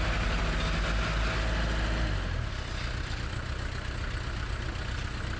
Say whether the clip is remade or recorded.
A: recorded